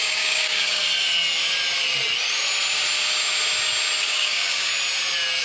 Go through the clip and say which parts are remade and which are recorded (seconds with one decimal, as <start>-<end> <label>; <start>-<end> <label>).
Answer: 0.0-0.8 remade; 0.8-4.0 recorded; 4.0-4.7 remade; 4.7-5.4 recorded

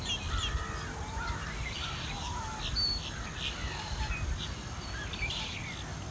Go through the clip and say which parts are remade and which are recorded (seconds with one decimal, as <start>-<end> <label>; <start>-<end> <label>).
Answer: 0.0-1.0 recorded; 1.0-2.3 remade; 2.3-6.1 recorded

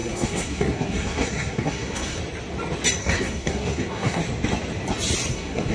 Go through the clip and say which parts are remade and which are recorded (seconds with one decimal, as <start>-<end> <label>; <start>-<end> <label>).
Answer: 0.0-2.2 remade; 2.2-3.0 recorded; 3.0-4.2 remade; 4.2-5.3 recorded; 5.3-5.7 remade

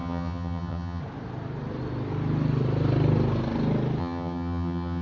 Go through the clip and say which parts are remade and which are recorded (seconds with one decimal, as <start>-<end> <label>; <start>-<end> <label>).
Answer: 0.0-1.0 remade; 1.0-4.0 recorded; 4.0-5.0 remade